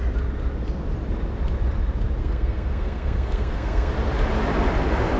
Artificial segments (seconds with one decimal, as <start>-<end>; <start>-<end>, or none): 2.2-3.9